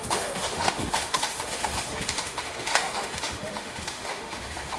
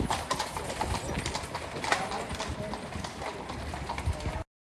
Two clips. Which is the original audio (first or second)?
second